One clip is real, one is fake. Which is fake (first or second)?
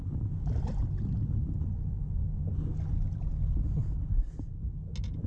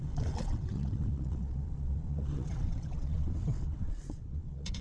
second